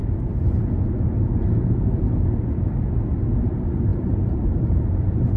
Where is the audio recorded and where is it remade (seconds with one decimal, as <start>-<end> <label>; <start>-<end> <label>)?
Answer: 0.0-3.9 recorded; 3.9-5.0 remade; 5.0-5.4 recorded